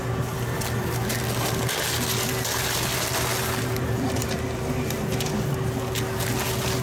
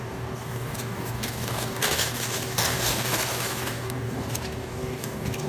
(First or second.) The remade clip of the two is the second